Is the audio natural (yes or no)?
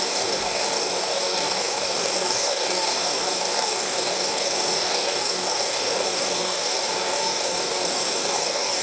no